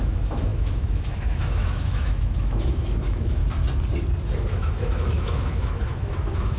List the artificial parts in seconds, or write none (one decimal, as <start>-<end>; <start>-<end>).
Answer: 0.0-3.4; 4.5-6.6